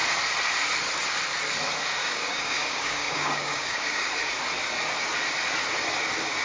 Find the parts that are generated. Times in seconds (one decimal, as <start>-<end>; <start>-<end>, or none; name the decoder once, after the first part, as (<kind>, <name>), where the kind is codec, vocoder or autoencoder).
2.0-4.1 (codec, DAC)

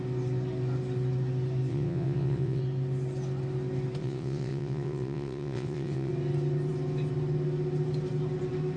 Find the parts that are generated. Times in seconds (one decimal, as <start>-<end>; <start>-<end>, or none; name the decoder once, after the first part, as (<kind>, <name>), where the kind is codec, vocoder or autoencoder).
1.7-2.6 (vocoder, WaveNeXt); 4.0-6.1

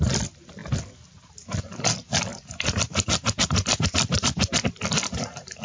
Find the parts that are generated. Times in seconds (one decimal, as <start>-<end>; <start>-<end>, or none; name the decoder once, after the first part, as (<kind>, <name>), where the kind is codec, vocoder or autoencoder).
2.3-4.6 (vocoder, BigVGAN v2)

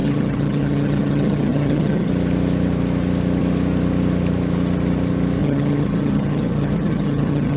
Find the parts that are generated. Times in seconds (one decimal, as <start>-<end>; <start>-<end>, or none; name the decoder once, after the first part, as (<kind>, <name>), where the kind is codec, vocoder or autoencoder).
0.0-2.1 (vocoder, HiFi-GAN); 5.4-7.6